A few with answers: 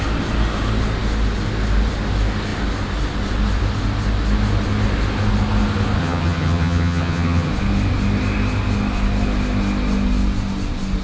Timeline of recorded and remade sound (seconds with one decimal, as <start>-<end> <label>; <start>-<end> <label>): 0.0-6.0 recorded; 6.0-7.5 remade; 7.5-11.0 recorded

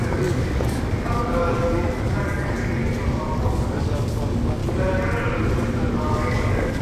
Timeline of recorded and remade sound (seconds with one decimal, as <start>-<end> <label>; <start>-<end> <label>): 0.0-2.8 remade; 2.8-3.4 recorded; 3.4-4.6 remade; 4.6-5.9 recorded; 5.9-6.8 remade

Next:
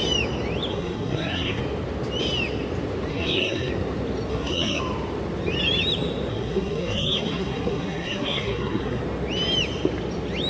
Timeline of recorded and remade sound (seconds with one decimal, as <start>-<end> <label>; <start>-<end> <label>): 0.0-0.7 recorded; 0.7-1.6 remade; 1.6-3.1 recorded; 3.1-3.7 remade; 3.7-4.3 recorded; 4.3-4.8 remade; 4.8-6.3 recorded; 6.3-9.0 remade; 9.0-10.5 recorded

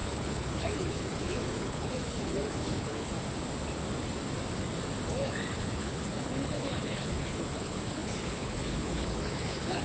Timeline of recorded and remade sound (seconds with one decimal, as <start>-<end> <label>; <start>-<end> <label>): 0.0-3.1 remade; 3.1-5.1 recorded; 5.1-9.8 remade